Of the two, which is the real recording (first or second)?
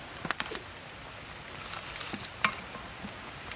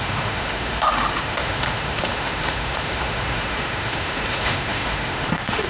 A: first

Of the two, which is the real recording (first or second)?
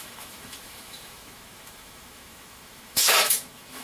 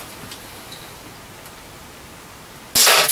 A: second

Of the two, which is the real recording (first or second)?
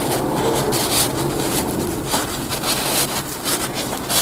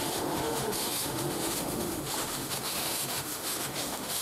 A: first